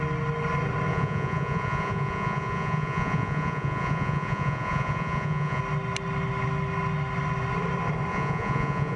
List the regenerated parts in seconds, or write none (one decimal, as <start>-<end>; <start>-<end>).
0.9-5.6; 8.1-9.0